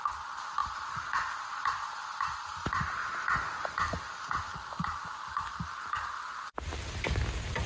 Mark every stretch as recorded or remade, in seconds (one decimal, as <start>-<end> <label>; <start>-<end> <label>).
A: 0.0-4.5 recorded; 4.5-6.5 remade; 6.5-7.7 recorded